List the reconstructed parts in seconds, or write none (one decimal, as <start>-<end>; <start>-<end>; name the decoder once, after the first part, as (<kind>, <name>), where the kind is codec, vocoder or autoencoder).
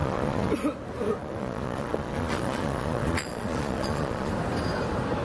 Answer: 0.0-0.5 (vocoder, Vocos); 1.2-4.3